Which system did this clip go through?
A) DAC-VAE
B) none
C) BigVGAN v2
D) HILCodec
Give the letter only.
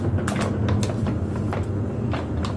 B